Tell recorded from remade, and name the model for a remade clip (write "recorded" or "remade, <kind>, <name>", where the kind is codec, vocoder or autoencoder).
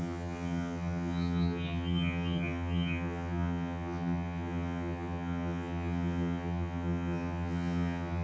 remade, vocoder, HiFi-GAN